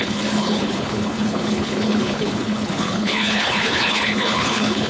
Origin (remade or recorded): remade